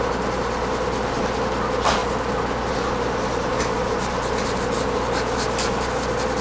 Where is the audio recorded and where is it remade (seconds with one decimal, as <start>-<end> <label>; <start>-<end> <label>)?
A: 0.0-6.4 recorded